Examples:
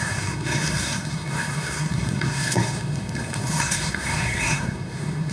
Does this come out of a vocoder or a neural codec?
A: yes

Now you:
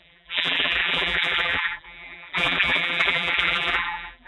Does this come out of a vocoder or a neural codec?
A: yes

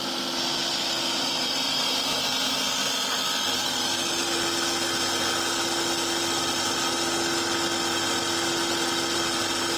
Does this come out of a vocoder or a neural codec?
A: no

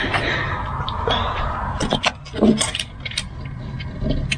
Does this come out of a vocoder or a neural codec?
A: no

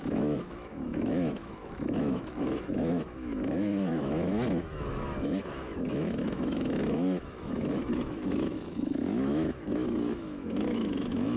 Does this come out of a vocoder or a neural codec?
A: yes